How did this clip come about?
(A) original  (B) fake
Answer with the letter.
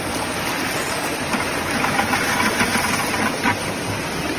A